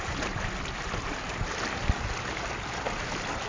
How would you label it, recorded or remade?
recorded